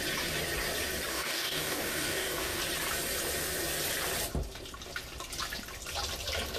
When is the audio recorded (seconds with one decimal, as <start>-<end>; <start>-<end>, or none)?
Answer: 0.0-1.1; 2.6-6.6